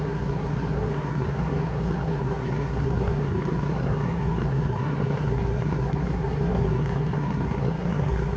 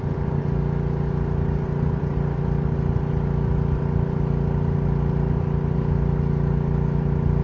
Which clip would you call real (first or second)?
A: second